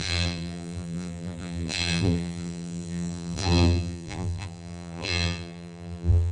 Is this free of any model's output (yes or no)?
no